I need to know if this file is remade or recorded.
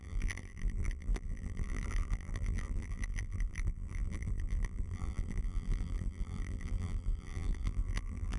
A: remade